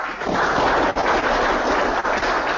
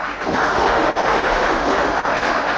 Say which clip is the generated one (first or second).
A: second